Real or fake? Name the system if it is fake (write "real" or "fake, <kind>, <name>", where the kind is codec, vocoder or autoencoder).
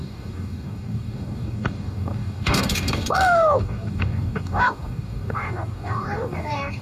fake, codec, DAC